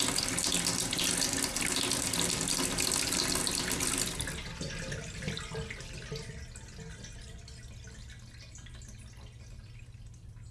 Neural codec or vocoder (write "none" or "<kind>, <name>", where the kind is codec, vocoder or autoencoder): none